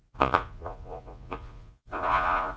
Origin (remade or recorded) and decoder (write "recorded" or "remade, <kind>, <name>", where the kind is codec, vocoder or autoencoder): remade, vocoder, Vocos